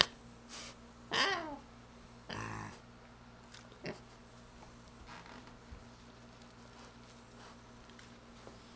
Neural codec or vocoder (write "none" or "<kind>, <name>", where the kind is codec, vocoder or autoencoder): none